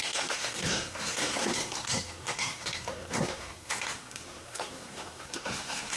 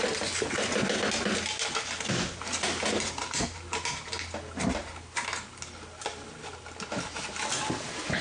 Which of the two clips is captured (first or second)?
second